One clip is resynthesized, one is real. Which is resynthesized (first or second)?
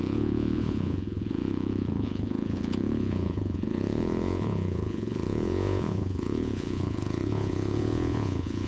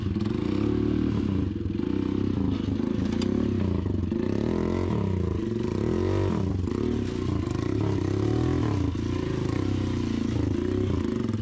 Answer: first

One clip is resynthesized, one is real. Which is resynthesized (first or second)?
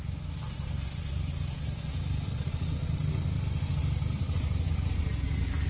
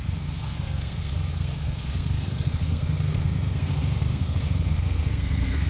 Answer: second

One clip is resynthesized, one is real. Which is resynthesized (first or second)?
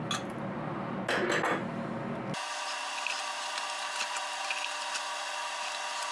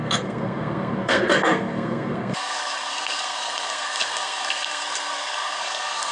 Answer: second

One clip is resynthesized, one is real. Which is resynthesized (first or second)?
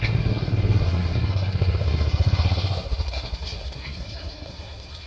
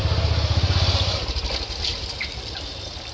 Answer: first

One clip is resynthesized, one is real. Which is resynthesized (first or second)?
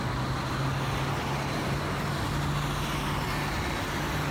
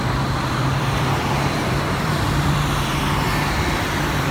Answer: second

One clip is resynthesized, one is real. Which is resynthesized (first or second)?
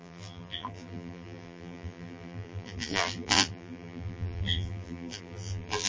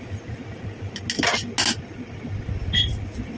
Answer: first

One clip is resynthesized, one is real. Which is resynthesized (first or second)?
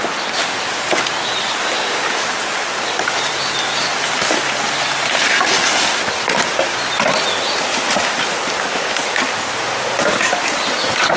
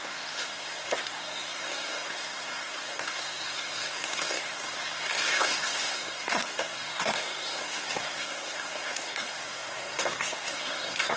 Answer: second